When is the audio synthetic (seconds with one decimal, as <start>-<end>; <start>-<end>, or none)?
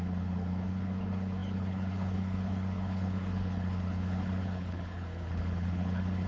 0.0-6.3